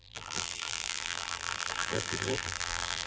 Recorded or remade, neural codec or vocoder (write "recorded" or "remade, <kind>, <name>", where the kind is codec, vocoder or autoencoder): remade, vocoder, BigVGAN v2